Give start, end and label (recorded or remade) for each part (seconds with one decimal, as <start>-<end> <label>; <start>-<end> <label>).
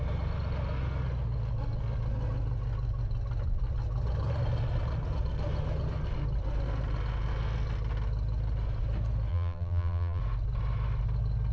0.0-9.3 recorded; 9.3-10.2 remade; 10.2-11.5 recorded